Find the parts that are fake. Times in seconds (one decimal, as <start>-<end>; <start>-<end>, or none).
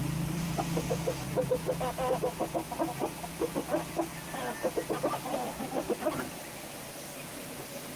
0.0-1.6; 4.1-6.7